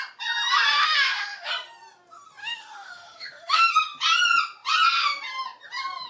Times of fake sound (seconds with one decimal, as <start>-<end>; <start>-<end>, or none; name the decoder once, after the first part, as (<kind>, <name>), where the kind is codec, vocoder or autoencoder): 0.7-1.5 (autoencoder, DAC-VAE); 2.4-3.7